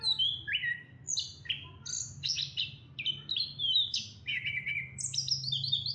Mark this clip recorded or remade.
recorded